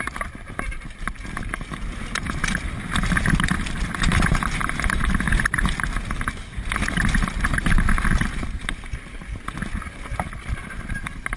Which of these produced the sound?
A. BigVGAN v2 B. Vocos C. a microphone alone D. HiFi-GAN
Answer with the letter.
C